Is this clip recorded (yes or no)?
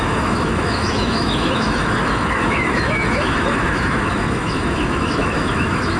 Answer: no